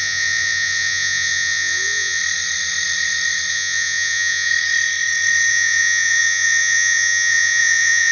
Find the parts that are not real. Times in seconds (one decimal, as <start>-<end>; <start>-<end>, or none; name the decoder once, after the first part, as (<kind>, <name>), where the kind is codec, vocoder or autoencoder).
0.0-2.2 (vocoder, Vocos); 3.5-4.5; 5.5-8.1